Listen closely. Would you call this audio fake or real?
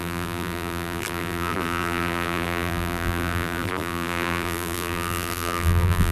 fake